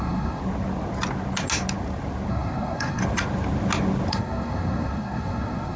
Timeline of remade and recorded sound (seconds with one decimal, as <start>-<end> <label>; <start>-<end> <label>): 0.0-0.4 remade; 0.4-2.3 recorded; 2.3-3.0 remade; 3.0-4.1 recorded; 4.1-5.8 remade